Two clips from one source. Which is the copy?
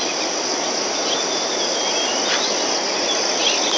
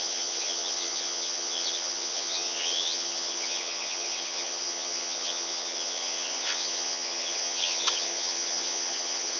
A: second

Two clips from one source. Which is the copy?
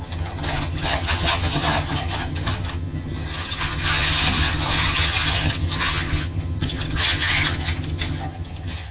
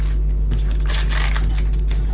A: first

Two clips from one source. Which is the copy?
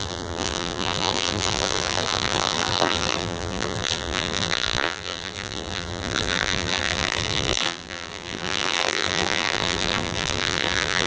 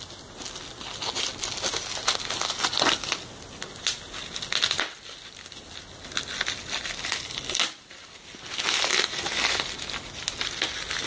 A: first